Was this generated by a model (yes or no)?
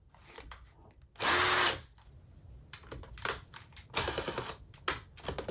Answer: no